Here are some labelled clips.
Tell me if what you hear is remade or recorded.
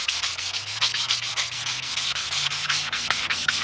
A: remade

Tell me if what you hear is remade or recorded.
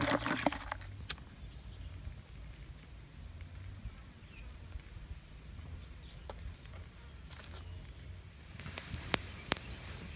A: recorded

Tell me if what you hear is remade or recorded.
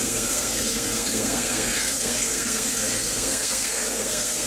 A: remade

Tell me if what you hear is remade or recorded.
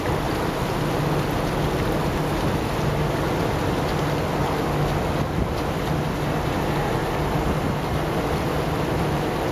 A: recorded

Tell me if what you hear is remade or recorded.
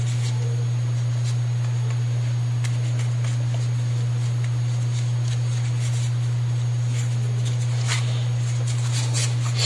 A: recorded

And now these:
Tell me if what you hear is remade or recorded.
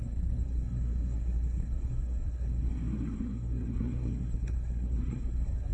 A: remade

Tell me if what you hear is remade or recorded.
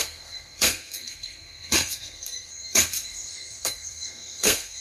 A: remade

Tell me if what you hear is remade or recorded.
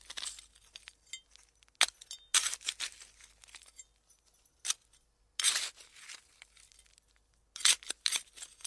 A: recorded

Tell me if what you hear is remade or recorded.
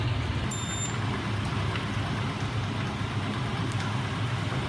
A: recorded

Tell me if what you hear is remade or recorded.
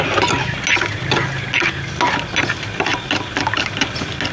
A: recorded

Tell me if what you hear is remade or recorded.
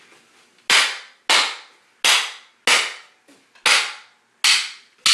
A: recorded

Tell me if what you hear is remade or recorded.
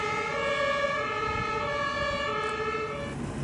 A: recorded